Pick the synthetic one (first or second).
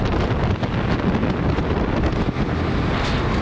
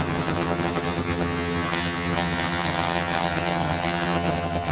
second